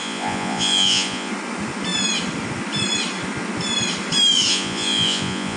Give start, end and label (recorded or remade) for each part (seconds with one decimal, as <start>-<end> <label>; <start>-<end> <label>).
0.0-1.3 remade; 1.3-4.5 recorded; 4.5-5.6 remade